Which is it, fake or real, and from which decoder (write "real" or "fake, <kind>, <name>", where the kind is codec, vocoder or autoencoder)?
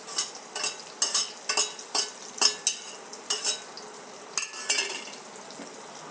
real